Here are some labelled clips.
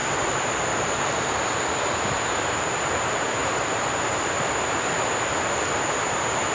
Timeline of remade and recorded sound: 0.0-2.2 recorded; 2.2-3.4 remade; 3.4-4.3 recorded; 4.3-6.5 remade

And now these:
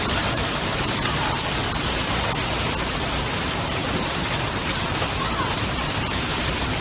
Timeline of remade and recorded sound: 0.0-1.6 remade; 1.6-3.4 recorded; 3.4-3.8 remade; 3.8-4.8 recorded; 4.8-6.8 remade

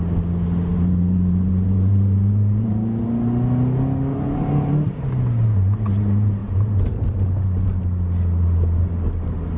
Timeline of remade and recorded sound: 0.0-0.7 recorded; 0.7-3.0 remade; 3.0-4.1 recorded; 4.1-5.0 remade; 5.0-6.4 recorded; 6.4-7.8 remade; 7.8-9.6 recorded

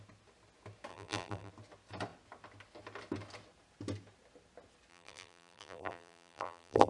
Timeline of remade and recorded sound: 0.0-0.9 recorded; 0.9-1.5 remade; 1.5-4.9 recorded; 4.9-6.9 remade